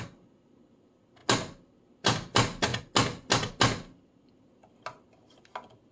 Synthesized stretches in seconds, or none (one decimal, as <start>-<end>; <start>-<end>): none